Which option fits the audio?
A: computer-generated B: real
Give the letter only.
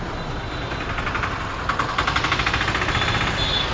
B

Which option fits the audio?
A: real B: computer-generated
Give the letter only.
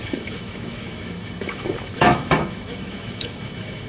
B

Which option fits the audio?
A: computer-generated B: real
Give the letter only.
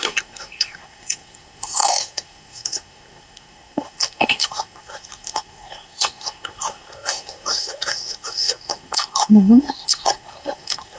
A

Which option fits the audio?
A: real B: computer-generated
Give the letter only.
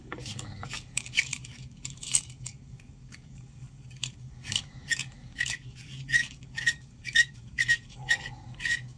B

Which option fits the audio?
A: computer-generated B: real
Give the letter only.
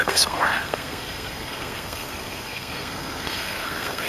A